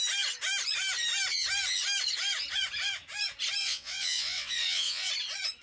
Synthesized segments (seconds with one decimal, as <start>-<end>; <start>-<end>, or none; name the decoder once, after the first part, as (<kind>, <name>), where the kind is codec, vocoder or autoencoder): 3.6-5.1 (vocoder, WaveNeXt)